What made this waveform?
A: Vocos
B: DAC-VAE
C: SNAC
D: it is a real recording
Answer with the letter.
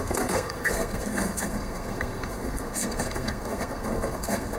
C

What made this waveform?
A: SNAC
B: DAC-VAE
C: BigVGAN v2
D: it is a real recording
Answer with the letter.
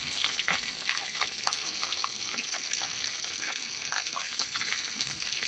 A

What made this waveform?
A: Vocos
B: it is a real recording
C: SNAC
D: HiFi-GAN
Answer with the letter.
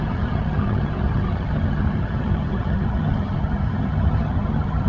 D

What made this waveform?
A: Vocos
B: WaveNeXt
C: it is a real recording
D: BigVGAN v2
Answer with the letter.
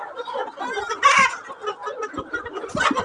C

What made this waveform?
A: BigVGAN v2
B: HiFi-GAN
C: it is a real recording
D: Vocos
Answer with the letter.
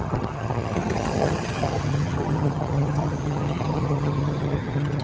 B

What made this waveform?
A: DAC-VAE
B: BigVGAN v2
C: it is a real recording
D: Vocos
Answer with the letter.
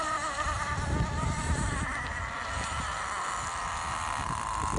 B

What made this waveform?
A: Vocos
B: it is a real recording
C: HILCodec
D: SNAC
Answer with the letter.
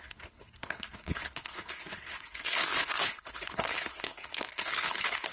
C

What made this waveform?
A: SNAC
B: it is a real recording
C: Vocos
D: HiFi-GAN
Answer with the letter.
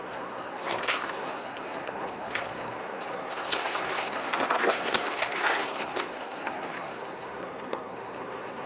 A